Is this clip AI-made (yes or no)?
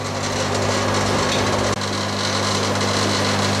no